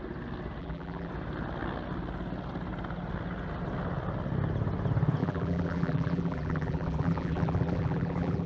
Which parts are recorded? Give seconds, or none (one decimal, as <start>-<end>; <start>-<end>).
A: 0.0-0.6; 1.1-5.2